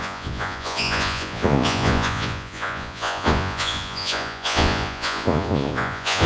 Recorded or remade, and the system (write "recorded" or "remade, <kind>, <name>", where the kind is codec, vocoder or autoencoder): remade, vocoder, Vocos